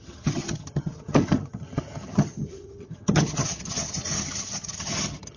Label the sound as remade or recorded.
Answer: remade